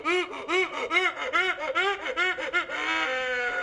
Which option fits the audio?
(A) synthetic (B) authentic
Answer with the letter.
B